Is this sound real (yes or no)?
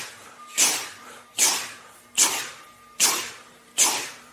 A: no